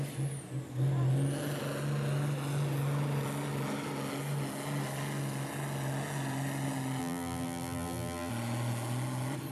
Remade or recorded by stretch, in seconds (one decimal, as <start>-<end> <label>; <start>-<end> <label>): 0.0-7.0 recorded; 7.0-8.3 remade; 8.3-9.5 recorded